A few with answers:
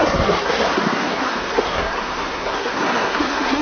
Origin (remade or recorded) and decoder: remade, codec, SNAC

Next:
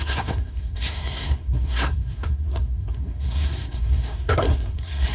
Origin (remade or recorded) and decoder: remade, codec, SNAC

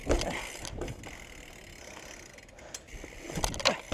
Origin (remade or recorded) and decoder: recorded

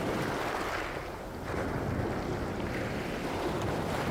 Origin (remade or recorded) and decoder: recorded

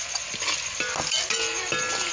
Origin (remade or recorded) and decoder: recorded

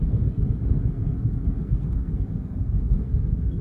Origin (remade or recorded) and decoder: remade, codec, SNAC